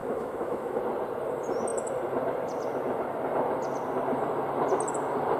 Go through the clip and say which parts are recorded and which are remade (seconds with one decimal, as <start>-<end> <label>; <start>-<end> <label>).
0.0-0.8 remade; 0.8-5.4 recorded